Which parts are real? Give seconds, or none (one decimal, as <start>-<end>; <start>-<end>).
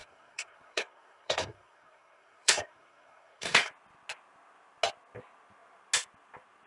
3.7-6.7